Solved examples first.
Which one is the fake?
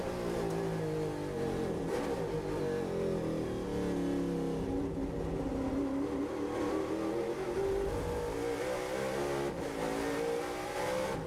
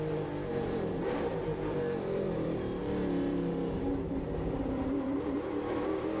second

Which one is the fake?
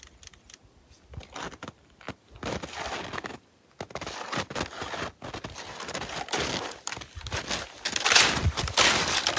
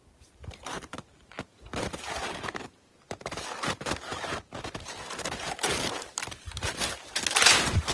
second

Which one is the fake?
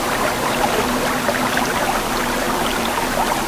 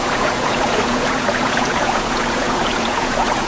second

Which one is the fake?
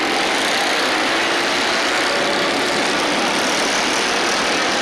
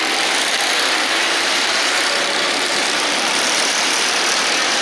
second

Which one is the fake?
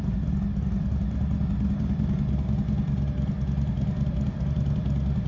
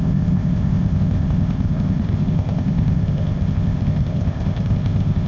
second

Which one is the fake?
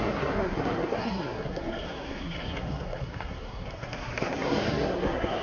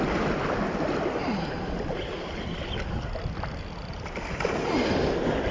first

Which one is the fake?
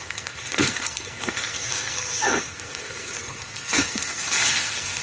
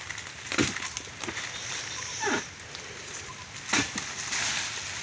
first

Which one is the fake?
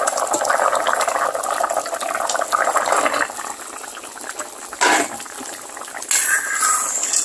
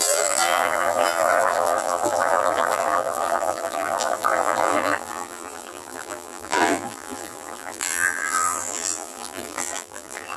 second